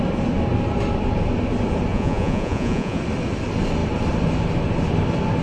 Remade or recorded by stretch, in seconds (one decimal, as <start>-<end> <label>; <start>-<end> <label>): 0.0-1.9 recorded; 1.9-3.0 remade; 3.0-5.4 recorded